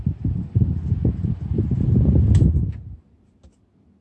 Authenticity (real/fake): real